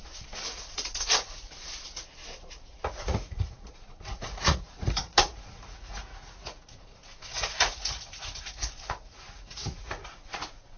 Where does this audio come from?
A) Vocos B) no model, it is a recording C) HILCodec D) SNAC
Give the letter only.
A